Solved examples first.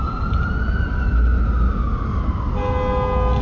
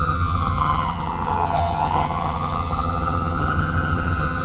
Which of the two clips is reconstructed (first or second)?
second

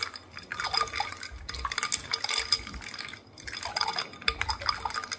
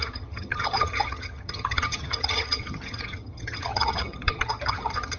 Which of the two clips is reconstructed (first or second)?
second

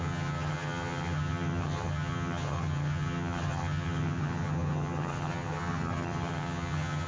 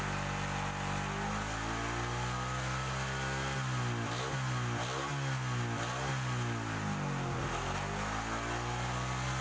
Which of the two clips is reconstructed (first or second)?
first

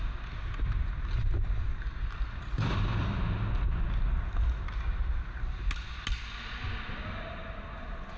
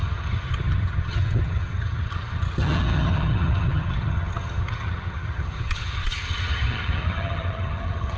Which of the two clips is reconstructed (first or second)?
second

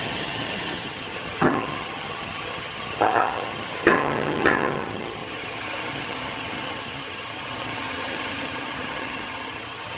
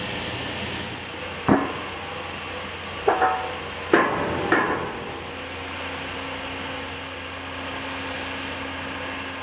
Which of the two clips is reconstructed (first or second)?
first